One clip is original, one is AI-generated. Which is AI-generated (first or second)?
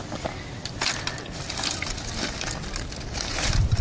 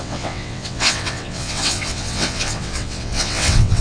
second